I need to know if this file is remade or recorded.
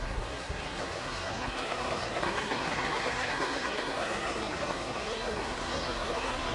remade